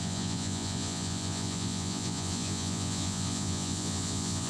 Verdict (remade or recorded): remade